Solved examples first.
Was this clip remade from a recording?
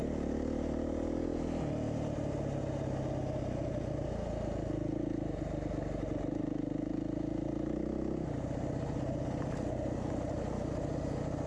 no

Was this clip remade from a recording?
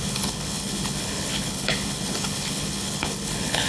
yes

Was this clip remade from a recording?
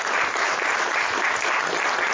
no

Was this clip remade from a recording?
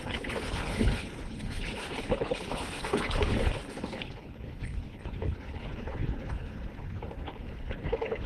yes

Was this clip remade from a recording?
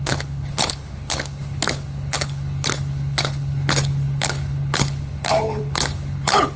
yes